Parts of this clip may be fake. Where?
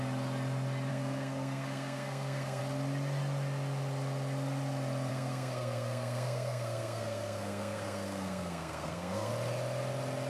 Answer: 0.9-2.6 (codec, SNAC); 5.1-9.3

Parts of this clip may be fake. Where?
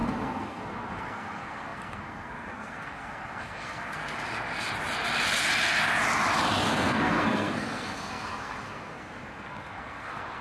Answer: 0.0-4.0 (codec, SNAC); 6.6-10.4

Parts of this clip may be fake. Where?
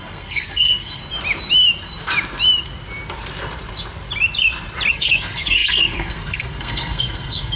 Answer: 0.0-1.0 (codec, SNAC); 4.9-7.6